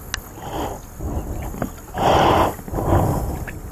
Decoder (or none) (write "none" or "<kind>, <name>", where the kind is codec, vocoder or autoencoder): none